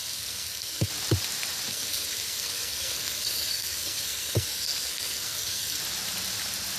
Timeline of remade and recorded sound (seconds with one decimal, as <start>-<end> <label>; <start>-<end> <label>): 0.0-0.9 remade; 0.9-1.7 recorded; 1.7-5.8 remade; 5.8-6.8 recorded